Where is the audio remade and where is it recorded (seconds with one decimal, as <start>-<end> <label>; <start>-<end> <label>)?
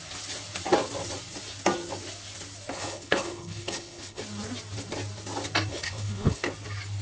0.0-2.7 recorded; 2.7-4.2 remade; 4.2-5.7 recorded; 5.7-6.5 remade; 6.5-7.0 recorded